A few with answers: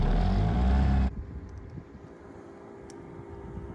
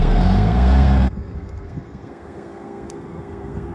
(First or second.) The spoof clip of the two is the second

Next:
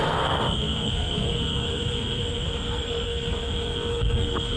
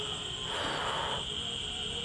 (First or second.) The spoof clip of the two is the first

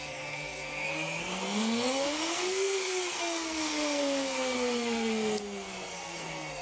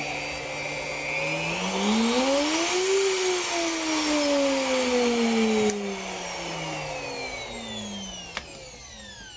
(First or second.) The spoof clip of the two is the first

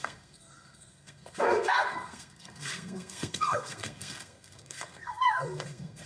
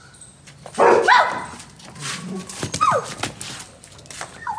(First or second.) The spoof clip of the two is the first